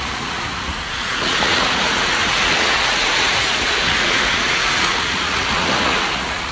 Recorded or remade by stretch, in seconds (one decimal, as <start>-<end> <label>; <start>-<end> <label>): 0.0-6.5 remade